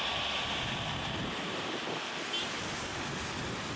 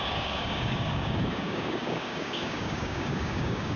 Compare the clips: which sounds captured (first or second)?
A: first